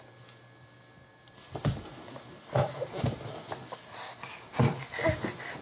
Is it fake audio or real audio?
real